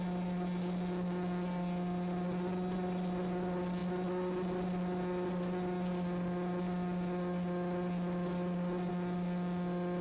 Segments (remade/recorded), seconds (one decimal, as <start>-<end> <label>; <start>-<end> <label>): 0.0-10.0 recorded